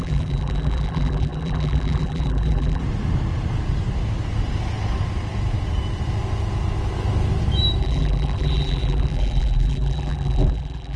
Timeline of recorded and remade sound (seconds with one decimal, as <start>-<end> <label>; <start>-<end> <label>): 0.0-2.8 remade; 2.8-7.8 recorded; 7.8-11.0 remade